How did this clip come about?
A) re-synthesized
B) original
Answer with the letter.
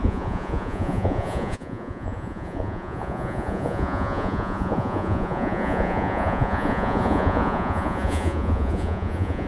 A